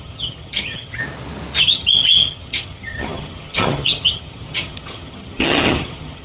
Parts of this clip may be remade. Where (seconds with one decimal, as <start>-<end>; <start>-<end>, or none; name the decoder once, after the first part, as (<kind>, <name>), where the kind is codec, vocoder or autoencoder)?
0.0-1.0 (vocoder, HiFi-GAN); 1.6-6.2